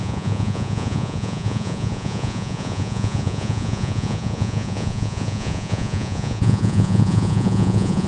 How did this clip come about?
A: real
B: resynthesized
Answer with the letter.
B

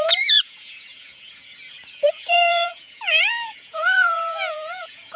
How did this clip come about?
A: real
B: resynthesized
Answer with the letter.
B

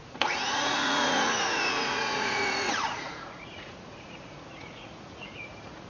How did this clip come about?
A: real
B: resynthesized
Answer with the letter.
B